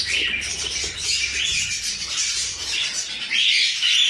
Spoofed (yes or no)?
no